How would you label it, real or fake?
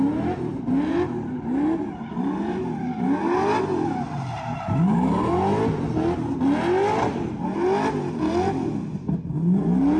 real